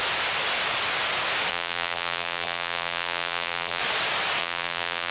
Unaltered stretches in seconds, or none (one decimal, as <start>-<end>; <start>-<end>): 0.0-1.5; 3.8-4.4